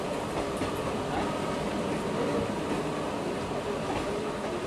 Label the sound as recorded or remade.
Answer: recorded